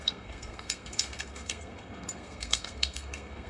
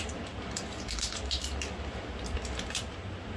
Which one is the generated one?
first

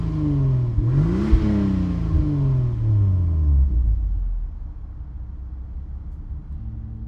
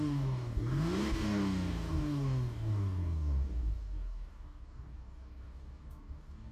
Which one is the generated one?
second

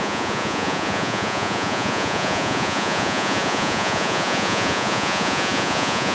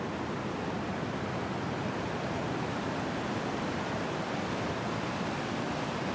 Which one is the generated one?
first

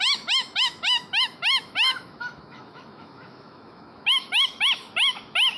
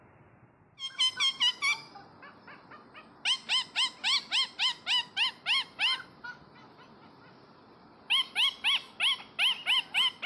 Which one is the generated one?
first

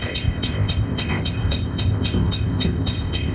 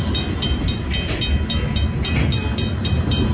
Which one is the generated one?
first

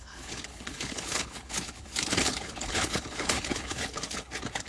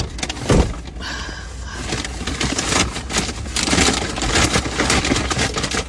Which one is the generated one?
first